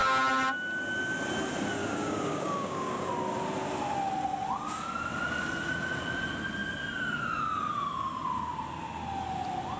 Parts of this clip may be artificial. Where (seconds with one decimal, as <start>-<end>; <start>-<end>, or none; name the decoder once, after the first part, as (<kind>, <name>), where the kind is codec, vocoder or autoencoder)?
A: 1.8-3.1 (codec, DAC)